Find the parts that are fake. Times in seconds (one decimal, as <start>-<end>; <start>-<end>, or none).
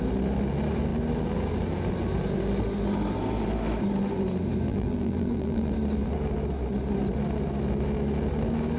4.7-5.7